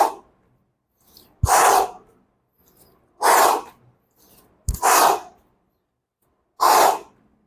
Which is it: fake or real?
real